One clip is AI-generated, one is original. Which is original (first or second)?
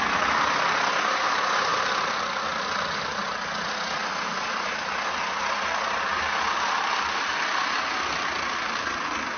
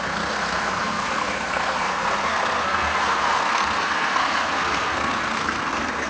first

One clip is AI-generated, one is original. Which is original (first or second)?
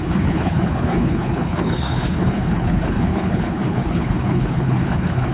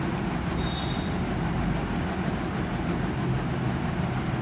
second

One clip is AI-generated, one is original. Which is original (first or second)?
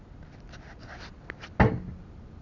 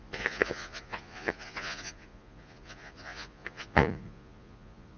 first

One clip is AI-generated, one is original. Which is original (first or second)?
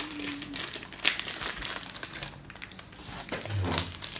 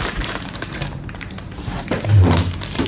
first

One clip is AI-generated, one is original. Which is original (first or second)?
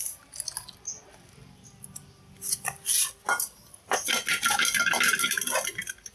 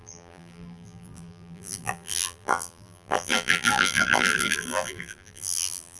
first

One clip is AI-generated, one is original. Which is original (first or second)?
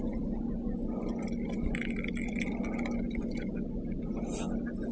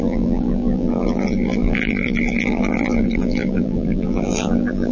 first